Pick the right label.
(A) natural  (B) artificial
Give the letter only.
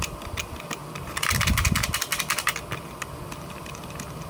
A